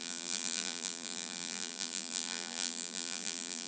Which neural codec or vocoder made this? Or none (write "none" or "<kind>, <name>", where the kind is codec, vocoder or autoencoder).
vocoder, BigVGAN v2